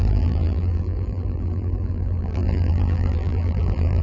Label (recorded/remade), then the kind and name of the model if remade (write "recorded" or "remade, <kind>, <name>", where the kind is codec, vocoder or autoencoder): remade, vocoder, BigVGAN v2